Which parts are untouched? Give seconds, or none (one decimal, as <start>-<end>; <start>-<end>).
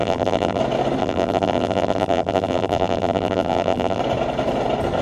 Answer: 0.6-1.0; 4.0-5.0